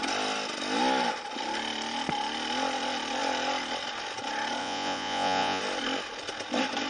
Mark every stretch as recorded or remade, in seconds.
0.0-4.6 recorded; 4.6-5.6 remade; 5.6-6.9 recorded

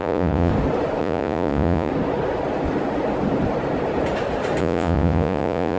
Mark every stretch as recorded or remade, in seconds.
0.0-0.5 remade; 0.5-1.0 recorded; 1.0-1.9 remade; 1.9-4.6 recorded; 4.6-5.8 remade

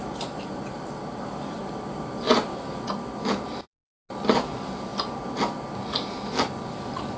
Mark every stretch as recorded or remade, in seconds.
0.0-7.2 recorded

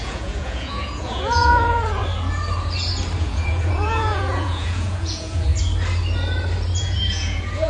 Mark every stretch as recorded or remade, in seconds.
0.0-2.0 remade; 2.0-3.2 recorded; 3.2-5.5 remade; 5.5-6.8 recorded; 6.8-7.7 remade

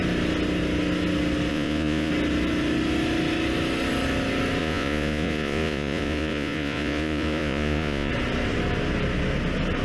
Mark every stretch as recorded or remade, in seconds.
0.0-1.5 recorded; 1.5-2.1 remade; 2.1-4.6 recorded; 4.6-8.1 remade; 8.1-9.8 recorded

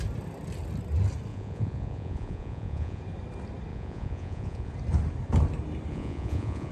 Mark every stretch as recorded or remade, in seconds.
0.0-1.3 recorded; 1.3-3.0 remade; 3.0-3.7 recorded; 3.7-4.7 remade; 4.7-5.9 recorded; 5.9-6.7 remade

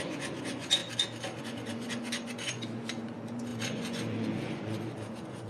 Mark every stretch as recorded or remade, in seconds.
0.0-0.8 remade; 0.8-1.4 recorded; 1.4-5.5 remade